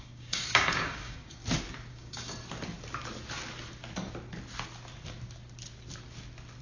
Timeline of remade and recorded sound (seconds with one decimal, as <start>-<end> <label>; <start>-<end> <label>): 0.0-1.4 remade; 1.4-1.9 recorded; 1.9-2.4 remade; 2.4-6.6 recorded